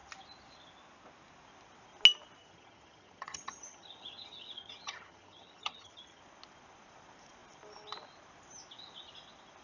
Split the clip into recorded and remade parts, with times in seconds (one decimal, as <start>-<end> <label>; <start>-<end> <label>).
0.0-2.4 recorded; 2.4-6.2 remade; 6.2-9.6 recorded